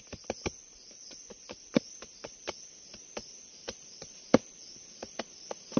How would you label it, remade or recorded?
recorded